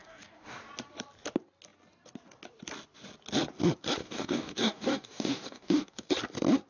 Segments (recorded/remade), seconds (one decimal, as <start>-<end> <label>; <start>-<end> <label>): 0.0-0.6 remade; 0.6-4.0 recorded; 4.0-6.1 remade; 6.1-6.7 recorded